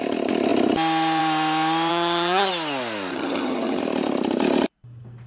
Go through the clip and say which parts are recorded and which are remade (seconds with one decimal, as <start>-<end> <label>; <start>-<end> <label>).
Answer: 0.0-1.9 recorded; 1.9-2.5 remade; 2.5-3.1 recorded; 3.1-3.8 remade; 3.8-5.3 recorded